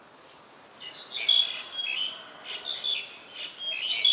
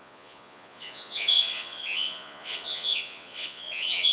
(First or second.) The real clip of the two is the first